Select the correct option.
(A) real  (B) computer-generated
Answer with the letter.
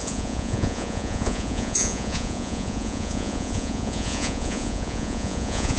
B